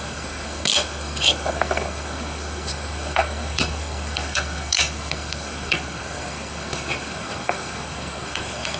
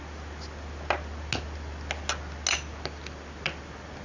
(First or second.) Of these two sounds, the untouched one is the second